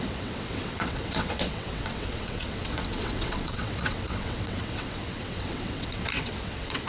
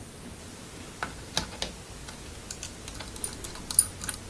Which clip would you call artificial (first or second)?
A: first